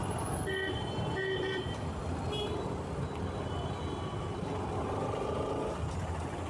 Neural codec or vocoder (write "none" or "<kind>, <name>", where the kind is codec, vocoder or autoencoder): none